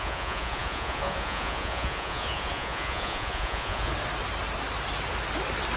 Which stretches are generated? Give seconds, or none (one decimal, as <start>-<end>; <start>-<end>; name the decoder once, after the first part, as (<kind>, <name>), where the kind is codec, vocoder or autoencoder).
0.0-3.9 (vocoder, Vocos)